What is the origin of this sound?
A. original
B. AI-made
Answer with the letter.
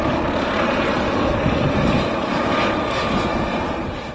A